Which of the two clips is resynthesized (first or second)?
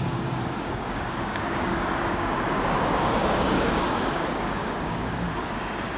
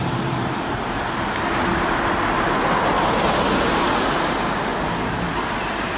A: first